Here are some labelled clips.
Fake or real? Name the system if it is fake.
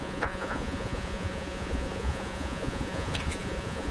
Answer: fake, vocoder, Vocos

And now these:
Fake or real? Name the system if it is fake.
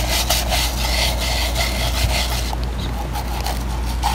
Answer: real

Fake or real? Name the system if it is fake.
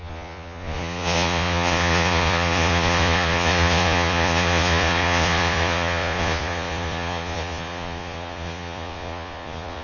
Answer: fake, vocoder, Vocos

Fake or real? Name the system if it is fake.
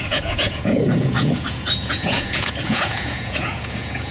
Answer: fake, vocoder, Vocos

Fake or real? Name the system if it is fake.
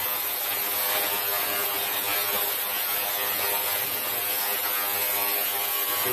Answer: fake, vocoder, Vocos